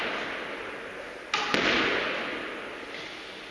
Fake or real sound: real